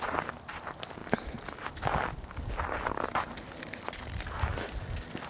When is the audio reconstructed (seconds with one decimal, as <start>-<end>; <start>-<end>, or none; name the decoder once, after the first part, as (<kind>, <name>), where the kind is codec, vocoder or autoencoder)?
none